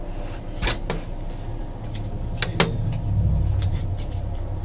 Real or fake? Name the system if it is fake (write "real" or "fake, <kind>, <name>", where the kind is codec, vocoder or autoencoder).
real